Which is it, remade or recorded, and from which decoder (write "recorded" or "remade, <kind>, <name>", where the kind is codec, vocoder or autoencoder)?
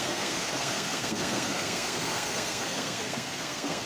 remade, codec, SNAC